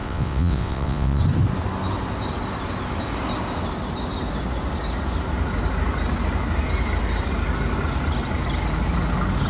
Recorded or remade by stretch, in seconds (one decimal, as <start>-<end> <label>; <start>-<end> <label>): 0.0-1.2 remade; 1.2-9.5 recorded